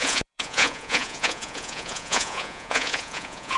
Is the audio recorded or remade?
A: remade